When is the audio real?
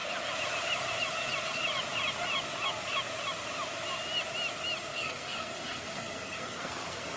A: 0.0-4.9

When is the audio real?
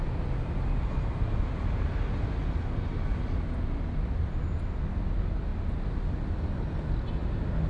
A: 0.0-7.7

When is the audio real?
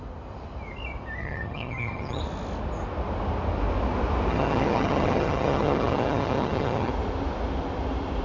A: 0.0-1.2; 2.2-4.3; 6.9-8.2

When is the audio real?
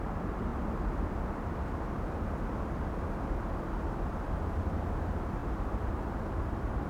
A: 0.5-3.2; 5.4-5.9